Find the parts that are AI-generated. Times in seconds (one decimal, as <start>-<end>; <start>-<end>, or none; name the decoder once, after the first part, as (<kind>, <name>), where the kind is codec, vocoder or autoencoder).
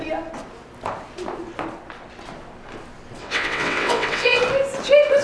3.2-4.4 (vocoder, WaveNeXt)